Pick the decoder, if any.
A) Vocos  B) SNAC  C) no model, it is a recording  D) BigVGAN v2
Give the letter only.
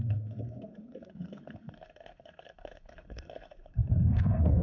B